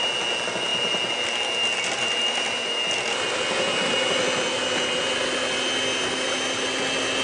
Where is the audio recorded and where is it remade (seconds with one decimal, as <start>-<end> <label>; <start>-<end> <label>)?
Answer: 0.0-7.2 recorded